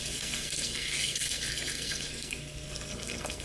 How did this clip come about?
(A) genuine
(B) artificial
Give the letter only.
B